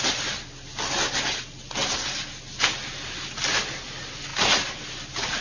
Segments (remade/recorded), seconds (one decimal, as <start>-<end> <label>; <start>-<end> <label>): 0.0-5.4 recorded